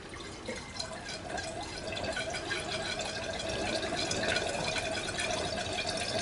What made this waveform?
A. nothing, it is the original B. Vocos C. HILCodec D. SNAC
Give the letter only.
A